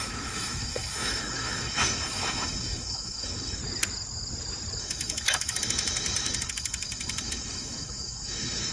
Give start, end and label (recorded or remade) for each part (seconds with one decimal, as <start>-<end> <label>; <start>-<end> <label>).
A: 0.0-3.6 remade; 3.6-4.8 recorded; 4.8-8.7 remade